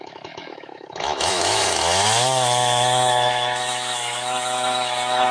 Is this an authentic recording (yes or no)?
no